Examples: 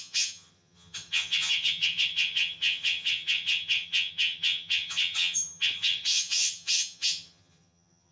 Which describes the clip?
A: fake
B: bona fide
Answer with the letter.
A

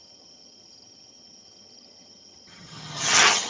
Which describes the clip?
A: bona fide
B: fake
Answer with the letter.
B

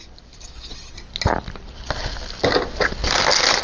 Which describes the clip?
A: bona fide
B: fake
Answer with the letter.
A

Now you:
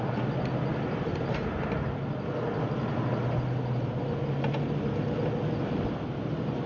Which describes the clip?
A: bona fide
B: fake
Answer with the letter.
A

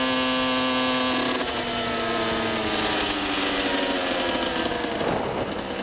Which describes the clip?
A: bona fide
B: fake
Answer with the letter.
A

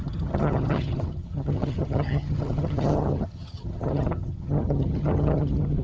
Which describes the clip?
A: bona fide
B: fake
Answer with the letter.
B